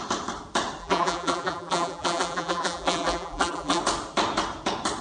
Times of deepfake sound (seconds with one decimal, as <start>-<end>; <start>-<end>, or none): 0.8-3.8